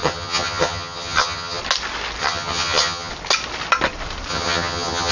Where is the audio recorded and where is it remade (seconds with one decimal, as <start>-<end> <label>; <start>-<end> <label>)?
0.0-1.6 remade; 1.6-2.2 recorded; 2.2-3.1 remade; 3.1-4.3 recorded; 4.3-5.1 remade